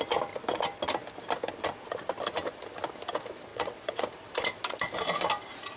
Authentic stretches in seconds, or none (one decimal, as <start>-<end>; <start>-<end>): 0.0-3.5; 4.0-5.8